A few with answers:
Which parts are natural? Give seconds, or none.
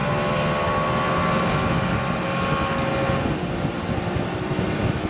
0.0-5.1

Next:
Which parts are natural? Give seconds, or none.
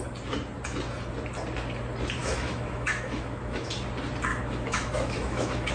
0.0-2.2; 3.7-4.3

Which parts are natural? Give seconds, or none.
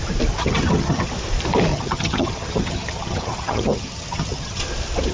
0.0-0.4; 1.1-1.7; 4.6-5.1